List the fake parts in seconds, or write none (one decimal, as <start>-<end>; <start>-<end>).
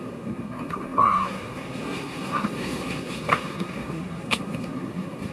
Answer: 0.0-5.3